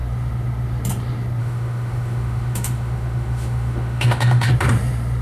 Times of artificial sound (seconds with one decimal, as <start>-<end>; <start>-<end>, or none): 1.4-4.5